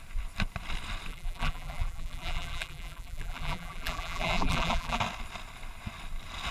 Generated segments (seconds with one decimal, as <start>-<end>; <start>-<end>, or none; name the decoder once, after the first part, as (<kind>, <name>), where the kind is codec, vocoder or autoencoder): 1.1-5.0 (vocoder, BigVGAN v2)